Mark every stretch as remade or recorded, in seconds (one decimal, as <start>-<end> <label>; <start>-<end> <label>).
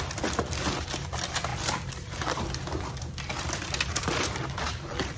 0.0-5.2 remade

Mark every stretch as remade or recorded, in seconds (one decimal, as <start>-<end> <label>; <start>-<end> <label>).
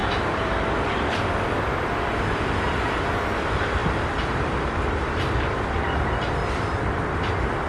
0.0-1.3 remade; 1.3-3.8 recorded; 3.8-7.3 remade; 7.3-7.7 recorded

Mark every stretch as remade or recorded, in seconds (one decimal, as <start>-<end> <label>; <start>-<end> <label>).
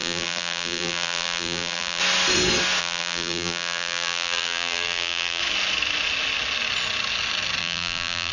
0.0-2.0 remade; 2.0-2.8 recorded; 2.8-5.4 remade; 5.4-7.6 recorded; 7.6-8.3 remade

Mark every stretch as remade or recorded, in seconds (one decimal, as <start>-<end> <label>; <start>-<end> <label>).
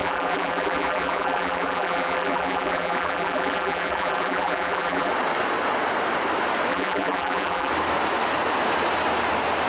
0.0-5.1 remade; 5.1-6.7 recorded; 6.7-7.7 remade; 7.7-9.7 recorded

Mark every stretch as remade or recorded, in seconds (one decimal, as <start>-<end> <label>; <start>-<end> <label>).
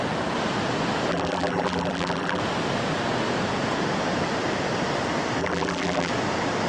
0.0-1.1 recorded; 1.1-2.4 remade; 2.4-5.4 recorded; 5.4-6.1 remade; 6.1-6.7 recorded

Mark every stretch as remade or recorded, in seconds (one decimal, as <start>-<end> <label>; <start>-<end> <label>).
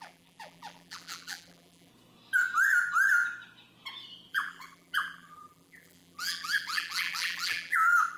0.0-1.9 remade; 1.9-4.3 recorded; 4.3-8.2 remade